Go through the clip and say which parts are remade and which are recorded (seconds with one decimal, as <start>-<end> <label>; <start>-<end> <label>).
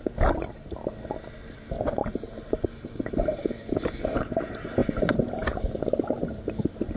0.0-2.0 recorded; 2.0-3.7 remade; 3.7-7.0 recorded